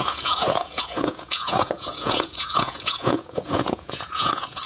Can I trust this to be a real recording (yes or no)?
no